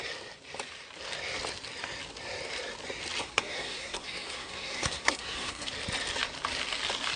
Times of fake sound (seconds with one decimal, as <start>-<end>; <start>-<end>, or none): 3.2-5.7